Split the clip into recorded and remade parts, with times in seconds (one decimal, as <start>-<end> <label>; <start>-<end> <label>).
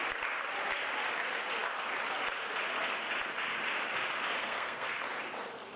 0.0-4.4 recorded; 4.4-5.0 remade; 5.0-5.8 recorded